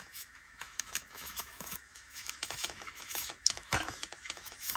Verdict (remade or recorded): remade